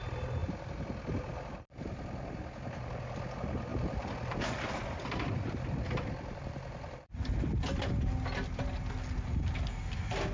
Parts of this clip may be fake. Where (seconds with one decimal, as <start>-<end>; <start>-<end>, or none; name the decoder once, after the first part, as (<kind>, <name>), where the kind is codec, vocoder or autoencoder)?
3.7-8.6 (vocoder, BigVGAN v2)